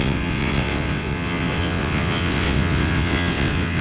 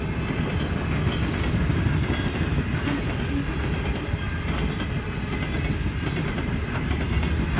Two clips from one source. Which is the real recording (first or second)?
second